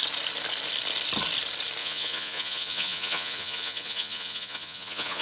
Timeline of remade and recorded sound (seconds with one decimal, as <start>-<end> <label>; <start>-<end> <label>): 0.0-1.8 recorded; 1.8-5.2 remade